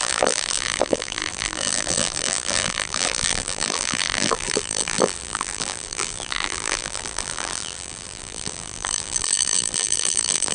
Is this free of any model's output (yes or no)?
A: no